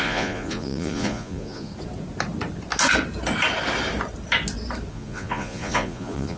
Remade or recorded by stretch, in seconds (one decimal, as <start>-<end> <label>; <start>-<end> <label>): 0.0-1.7 remade; 1.7-4.9 recorded; 4.9-6.4 remade